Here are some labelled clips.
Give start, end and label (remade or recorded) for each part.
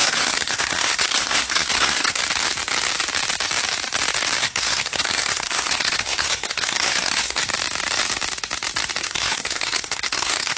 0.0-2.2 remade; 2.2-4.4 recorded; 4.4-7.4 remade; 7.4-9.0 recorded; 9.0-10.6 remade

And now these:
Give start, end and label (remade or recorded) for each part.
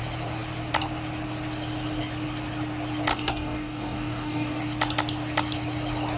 0.0-3.1 recorded; 3.1-4.6 remade; 4.6-6.2 recorded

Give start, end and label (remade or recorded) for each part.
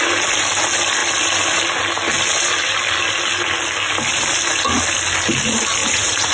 0.0-5.8 recorded; 5.8-6.3 remade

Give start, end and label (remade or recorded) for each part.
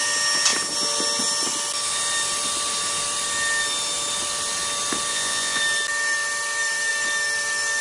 0.0-5.1 recorded; 5.1-5.6 remade; 5.6-7.8 recorded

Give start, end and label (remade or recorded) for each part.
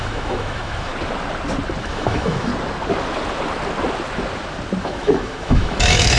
0.0-0.9 remade; 0.9-1.8 recorded; 1.8-2.5 remade; 2.5-4.8 recorded; 4.8-6.2 remade